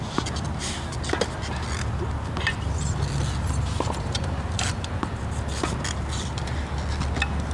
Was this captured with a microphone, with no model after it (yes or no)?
yes